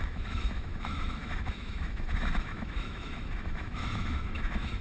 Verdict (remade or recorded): remade